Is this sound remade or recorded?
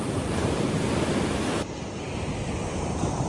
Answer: recorded